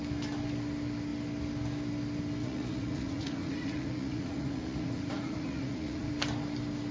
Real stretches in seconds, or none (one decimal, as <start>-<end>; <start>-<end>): 0.0-2.4; 6.1-6.9